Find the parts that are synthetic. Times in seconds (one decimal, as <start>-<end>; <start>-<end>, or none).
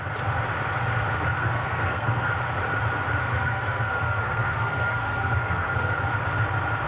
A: 1.4-2.3; 3.2-5.9